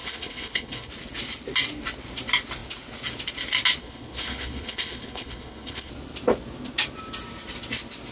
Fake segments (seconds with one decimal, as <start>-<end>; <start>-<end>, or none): 0.0-0.9; 3.8-5.9